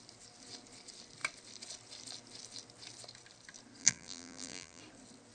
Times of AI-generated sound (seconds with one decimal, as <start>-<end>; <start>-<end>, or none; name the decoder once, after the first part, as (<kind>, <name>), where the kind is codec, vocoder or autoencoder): 3.8-4.8 (vocoder, BigVGAN v2)